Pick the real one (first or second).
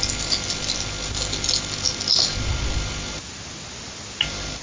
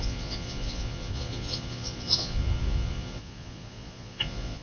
first